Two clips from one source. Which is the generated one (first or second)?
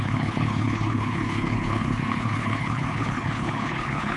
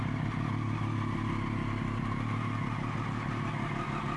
first